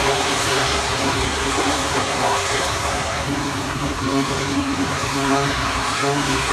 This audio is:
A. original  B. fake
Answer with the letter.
B